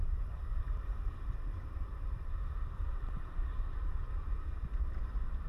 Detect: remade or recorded remade